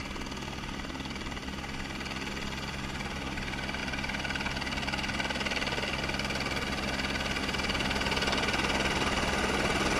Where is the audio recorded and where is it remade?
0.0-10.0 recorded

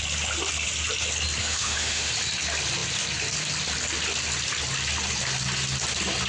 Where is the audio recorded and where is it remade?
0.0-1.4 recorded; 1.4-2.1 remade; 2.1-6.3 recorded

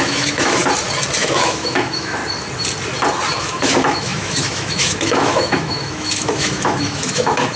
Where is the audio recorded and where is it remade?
0.0-0.6 remade; 0.6-1.2 recorded; 1.2-2.2 remade; 2.2-3.4 recorded; 3.4-7.6 remade

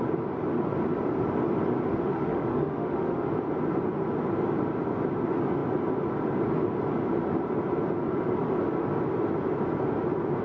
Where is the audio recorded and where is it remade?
0.0-1.9 recorded; 1.9-3.3 remade; 3.3-10.4 recorded

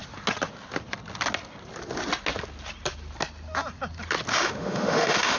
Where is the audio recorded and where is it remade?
0.0-4.3 recorded; 4.3-5.4 remade

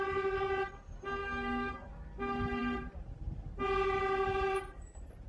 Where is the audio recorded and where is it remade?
0.0-1.2 recorded; 1.2-1.9 remade; 1.9-5.3 recorded

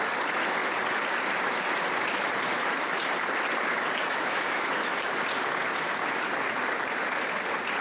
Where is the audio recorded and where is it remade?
0.0-4.0 recorded; 4.0-5.1 remade; 5.1-7.8 recorded